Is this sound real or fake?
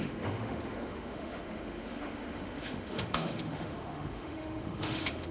fake